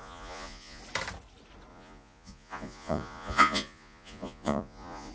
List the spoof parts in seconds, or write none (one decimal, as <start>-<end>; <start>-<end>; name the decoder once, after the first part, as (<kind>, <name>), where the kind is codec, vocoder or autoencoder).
0.0-0.8 (vocoder, Vocos); 1.7-5.1